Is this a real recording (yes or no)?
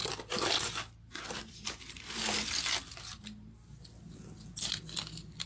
yes